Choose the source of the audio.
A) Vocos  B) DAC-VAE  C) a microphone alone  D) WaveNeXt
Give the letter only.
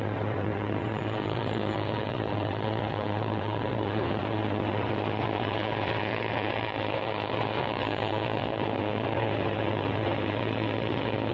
D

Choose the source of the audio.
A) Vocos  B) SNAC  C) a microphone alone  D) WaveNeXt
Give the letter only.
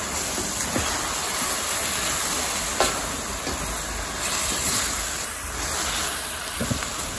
C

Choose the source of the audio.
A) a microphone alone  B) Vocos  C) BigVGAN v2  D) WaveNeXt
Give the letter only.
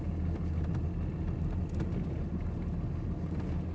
A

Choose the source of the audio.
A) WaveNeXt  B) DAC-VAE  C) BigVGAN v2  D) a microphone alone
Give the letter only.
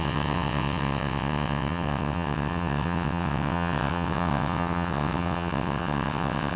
A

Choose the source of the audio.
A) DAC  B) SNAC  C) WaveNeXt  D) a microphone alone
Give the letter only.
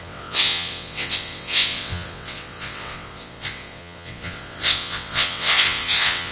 C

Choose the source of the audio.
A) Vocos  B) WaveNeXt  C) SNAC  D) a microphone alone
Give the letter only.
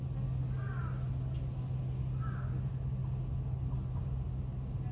D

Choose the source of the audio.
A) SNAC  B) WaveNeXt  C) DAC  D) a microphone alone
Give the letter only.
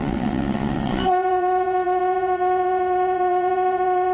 B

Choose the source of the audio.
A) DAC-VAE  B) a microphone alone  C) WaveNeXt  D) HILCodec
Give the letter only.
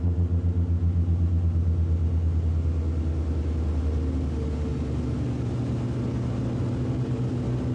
B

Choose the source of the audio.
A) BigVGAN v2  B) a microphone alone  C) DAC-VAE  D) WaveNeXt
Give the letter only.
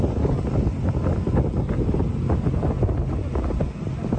B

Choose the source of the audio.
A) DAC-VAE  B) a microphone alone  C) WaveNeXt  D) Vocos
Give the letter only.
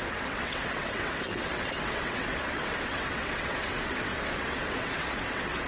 C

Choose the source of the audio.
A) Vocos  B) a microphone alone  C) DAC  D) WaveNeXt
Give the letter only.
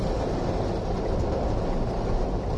B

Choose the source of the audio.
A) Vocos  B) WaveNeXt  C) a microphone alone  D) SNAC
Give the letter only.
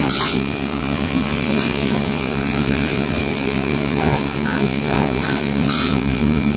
B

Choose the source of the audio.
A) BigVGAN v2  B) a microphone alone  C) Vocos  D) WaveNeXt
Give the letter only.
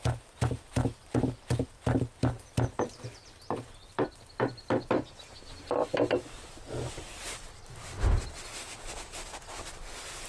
B